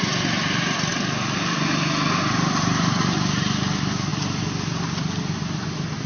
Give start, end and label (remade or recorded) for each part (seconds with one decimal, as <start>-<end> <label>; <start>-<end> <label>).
0.0-6.1 recorded